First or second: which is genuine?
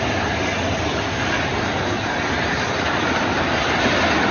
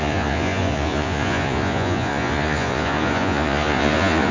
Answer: first